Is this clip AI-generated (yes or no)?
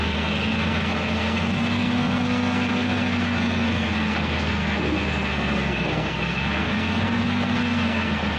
yes